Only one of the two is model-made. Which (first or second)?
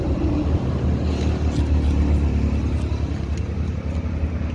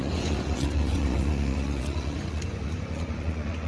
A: second